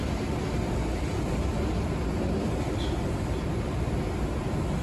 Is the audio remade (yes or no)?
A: no